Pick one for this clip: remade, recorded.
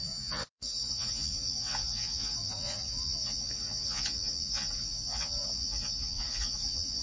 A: remade